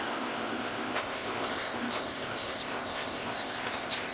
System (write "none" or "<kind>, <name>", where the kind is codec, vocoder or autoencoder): codec, ZipCodec